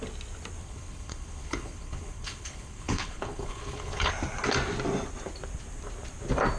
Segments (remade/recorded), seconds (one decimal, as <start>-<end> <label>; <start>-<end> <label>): 0.0-0.6 recorded; 0.6-4.1 remade; 4.1-6.6 recorded